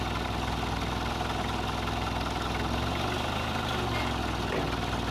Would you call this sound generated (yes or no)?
no